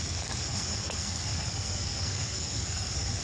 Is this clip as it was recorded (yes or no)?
no